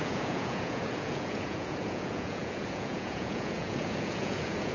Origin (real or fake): fake